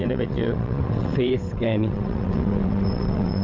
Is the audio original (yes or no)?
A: no